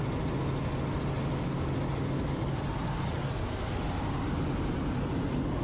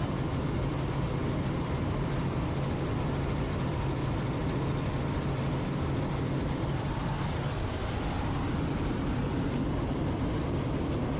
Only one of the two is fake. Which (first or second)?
second